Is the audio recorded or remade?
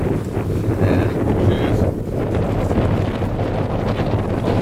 recorded